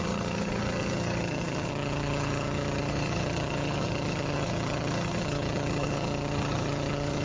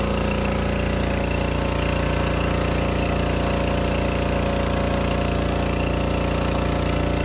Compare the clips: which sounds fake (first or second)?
first